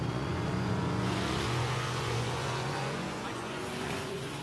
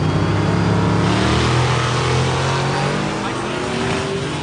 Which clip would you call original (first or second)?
second